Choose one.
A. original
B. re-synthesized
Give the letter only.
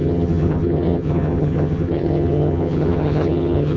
B